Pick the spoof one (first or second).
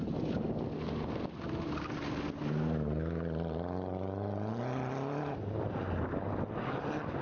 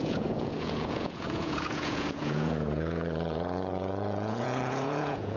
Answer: second